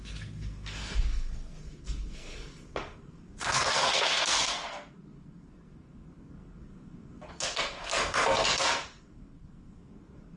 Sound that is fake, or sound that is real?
fake